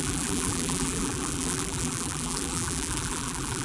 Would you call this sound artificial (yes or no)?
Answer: yes